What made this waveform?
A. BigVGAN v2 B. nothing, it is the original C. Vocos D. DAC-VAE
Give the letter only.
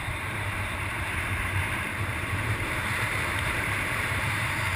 A